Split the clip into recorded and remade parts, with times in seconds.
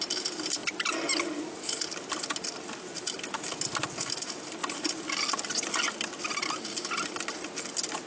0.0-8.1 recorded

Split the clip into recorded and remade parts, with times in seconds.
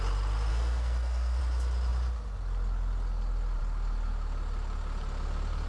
0.0-0.5 recorded; 0.5-1.4 remade; 1.4-5.7 recorded